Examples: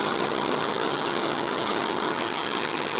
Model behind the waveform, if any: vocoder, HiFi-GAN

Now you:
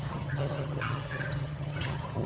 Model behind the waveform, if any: vocoder, HiFi-GAN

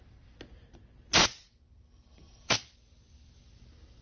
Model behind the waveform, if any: none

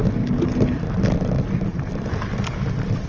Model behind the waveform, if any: none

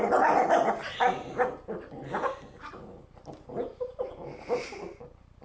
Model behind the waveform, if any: none